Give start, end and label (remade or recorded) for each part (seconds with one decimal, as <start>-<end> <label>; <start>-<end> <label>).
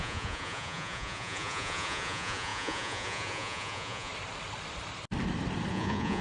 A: 0.0-4.1 remade; 4.1-5.7 recorded; 5.7-6.2 remade